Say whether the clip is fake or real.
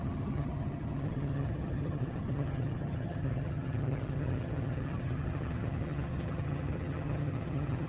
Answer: fake